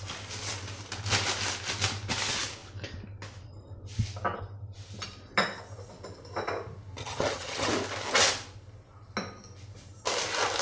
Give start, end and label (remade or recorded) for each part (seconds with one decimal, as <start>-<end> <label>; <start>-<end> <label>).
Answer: 0.0-7.0 recorded; 7.0-7.7 remade; 7.7-10.6 recorded